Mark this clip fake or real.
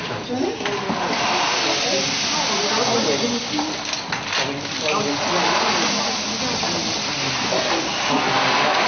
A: real